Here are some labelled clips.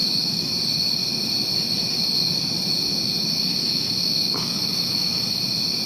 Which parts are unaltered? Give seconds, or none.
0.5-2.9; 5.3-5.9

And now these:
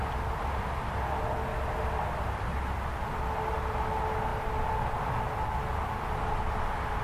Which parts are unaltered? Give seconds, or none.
0.0-7.0